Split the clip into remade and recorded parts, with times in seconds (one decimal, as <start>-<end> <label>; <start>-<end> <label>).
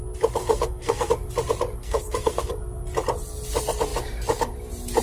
0.0-0.4 recorded; 0.4-1.1 remade; 1.1-1.8 recorded; 1.8-2.5 remade; 2.5-5.0 recorded